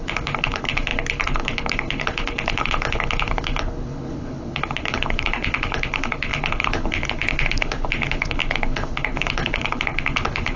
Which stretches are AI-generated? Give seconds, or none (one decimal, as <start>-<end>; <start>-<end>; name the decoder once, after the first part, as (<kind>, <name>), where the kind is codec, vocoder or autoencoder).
0.0-10.6 (codec, HILCodec)

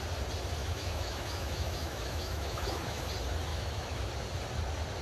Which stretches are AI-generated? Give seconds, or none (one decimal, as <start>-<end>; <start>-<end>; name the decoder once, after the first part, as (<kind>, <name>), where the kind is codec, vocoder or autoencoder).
0.6-3.0 (autoencoder, DAC-VAE); 3.5-4.1